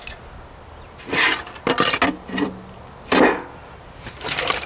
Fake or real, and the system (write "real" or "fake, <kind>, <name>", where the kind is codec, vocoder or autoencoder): real